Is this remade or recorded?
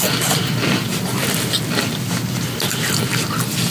recorded